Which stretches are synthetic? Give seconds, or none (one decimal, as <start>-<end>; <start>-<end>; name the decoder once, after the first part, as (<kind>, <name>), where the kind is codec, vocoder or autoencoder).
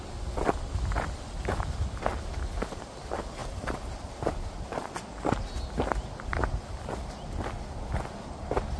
3.4-5.1 (vocoder, BigVGAN v2); 6.3-7.0